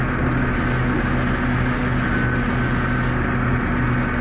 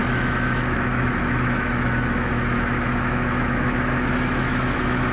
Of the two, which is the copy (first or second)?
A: second